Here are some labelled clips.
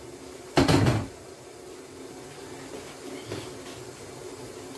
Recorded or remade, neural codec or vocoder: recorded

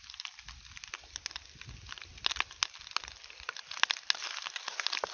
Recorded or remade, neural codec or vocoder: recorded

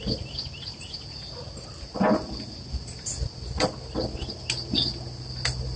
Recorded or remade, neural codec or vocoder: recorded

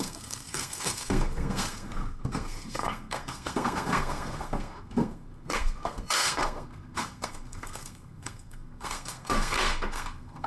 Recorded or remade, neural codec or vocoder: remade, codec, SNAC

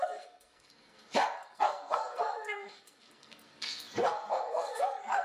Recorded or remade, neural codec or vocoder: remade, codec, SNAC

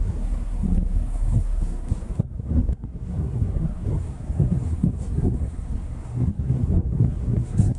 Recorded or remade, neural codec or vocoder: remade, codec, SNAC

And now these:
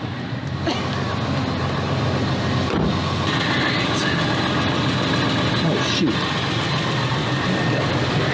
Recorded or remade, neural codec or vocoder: recorded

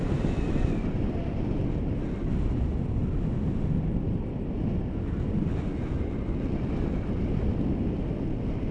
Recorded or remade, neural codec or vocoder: recorded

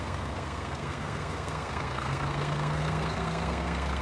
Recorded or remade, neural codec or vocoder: remade, codec, SNAC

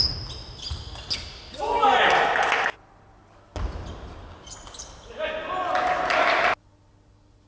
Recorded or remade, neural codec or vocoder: recorded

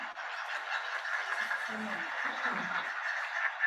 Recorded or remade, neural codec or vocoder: recorded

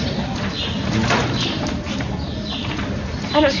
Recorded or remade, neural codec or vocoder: recorded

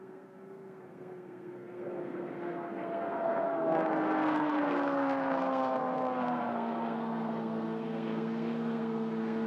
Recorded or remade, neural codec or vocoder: remade, codec, SNAC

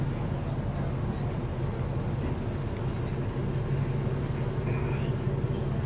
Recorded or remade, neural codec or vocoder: recorded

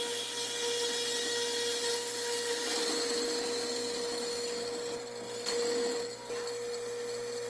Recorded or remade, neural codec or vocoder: recorded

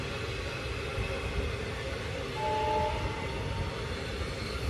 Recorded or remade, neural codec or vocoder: recorded